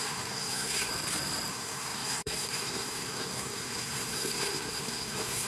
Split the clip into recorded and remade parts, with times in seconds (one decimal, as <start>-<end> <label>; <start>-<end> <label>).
0.0-0.9 remade; 0.9-1.5 recorded; 1.5-5.5 remade